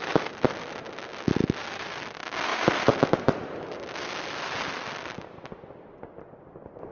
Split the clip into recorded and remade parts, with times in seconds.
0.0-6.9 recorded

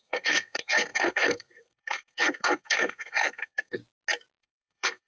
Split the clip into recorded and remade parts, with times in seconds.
0.0-3.8 remade; 3.8-4.4 recorded; 4.4-5.1 remade

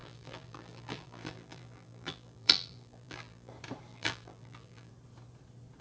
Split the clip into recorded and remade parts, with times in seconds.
0.0-3.5 remade; 3.5-3.9 recorded; 3.9-4.9 remade; 4.9-5.8 recorded

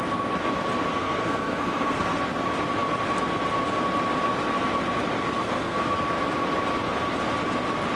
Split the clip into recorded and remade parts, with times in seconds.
0.0-0.9 recorded; 0.9-2.2 remade; 2.2-5.4 recorded; 5.4-6.0 remade; 6.0-8.0 recorded

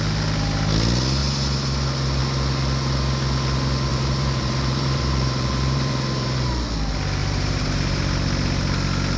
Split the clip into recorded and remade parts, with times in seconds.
0.0-3.9 recorded; 3.9-6.5 remade; 6.5-7.2 recorded; 7.2-7.8 remade; 7.8-9.2 recorded

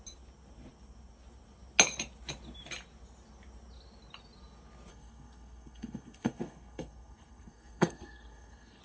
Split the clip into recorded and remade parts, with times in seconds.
0.0-4.9 recorded; 4.9-8.8 remade

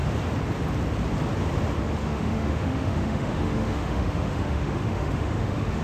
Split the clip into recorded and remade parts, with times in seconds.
0.0-2.0 recorded; 2.0-5.8 remade